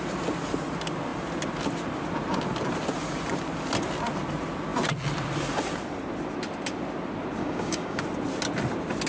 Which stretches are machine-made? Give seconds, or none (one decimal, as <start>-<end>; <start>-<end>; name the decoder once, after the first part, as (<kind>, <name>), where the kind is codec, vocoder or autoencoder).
7.4-8.0 (codec, DAC)